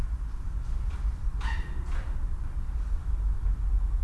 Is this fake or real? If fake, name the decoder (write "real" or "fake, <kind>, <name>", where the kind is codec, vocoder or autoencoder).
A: real